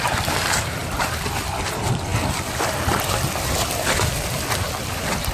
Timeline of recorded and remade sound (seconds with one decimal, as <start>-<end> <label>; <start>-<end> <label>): 0.0-2.1 remade; 2.1-4.7 recorded; 4.7-5.3 remade